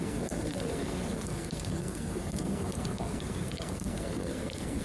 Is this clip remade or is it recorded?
remade